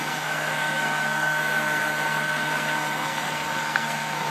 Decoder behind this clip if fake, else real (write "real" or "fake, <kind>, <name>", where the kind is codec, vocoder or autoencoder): fake, codec, SNAC